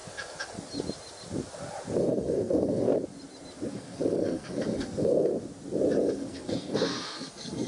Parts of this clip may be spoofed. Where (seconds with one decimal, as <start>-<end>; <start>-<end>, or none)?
2.0-2.9; 3.7-5.3; 6.0-7.7